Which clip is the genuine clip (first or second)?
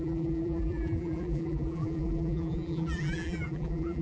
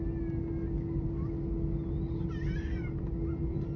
second